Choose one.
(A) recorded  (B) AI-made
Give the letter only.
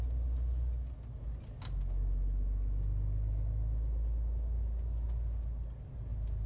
A